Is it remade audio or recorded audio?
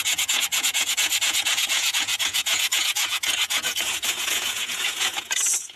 remade